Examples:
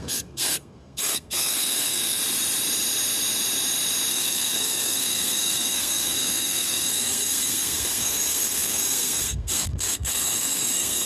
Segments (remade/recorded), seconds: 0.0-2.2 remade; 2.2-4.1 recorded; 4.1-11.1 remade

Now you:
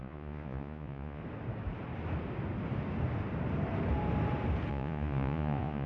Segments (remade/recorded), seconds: 0.0-1.2 remade; 1.2-4.7 recorded; 4.7-5.9 remade

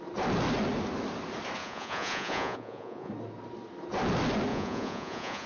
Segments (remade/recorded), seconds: 0.0-1.6 recorded; 1.6-3.1 remade; 3.1-4.5 recorded; 4.5-5.5 remade

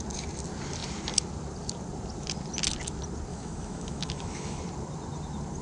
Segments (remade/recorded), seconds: 0.0-3.3 recorded; 3.3-4.6 remade; 4.6-5.6 recorded

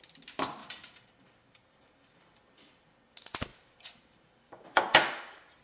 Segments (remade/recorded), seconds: 0.0-0.6 recorded; 0.6-2.4 remade; 2.4-3.5 recorded; 3.5-5.6 remade

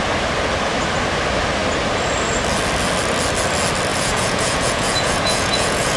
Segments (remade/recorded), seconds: 0.0-3.9 recorded; 3.9-6.0 remade

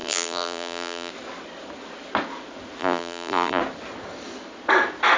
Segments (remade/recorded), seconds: 0.0-1.1 remade; 1.1-2.8 recorded; 2.8-3.6 remade; 3.6-5.2 recorded

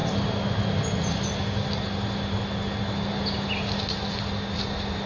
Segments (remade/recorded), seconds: 0.0-5.1 recorded